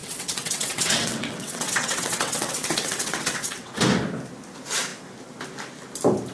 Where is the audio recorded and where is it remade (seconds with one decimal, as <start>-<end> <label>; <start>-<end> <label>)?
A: 0.0-3.8 remade; 3.8-6.3 recorded